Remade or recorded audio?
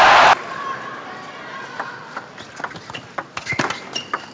recorded